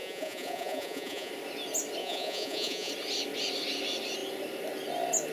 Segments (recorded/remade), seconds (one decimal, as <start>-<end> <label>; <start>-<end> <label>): 0.0-1.3 remade; 1.3-2.0 recorded; 2.0-2.9 remade; 2.9-5.3 recorded